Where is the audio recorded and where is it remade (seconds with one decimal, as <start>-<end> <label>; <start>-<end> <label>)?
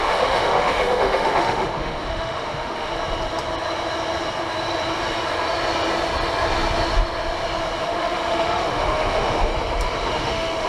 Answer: 0.0-2.9 remade; 2.9-7.8 recorded; 7.8-9.5 remade; 9.5-10.1 recorded; 10.1-10.7 remade